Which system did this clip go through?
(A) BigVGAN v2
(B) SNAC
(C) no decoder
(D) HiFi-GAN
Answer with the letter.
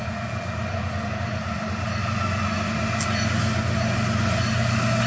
C